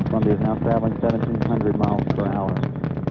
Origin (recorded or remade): recorded